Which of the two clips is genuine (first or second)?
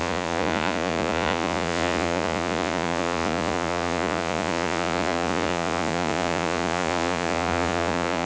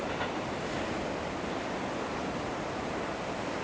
second